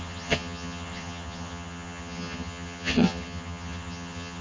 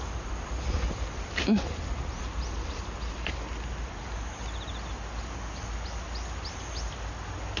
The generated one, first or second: first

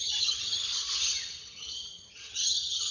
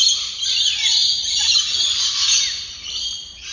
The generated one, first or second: first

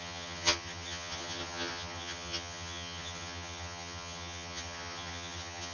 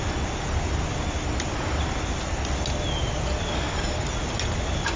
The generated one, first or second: first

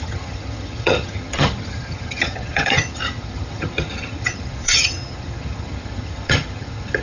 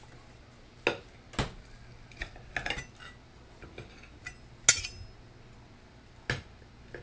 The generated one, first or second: first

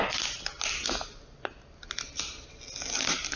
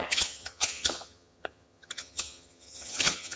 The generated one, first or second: second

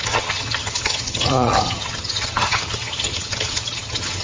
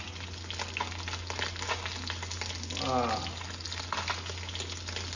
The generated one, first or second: first